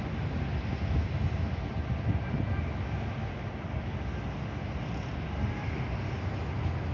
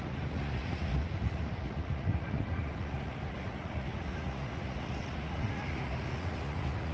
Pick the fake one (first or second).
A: second